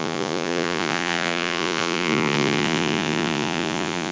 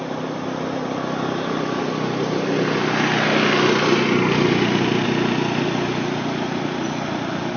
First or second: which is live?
second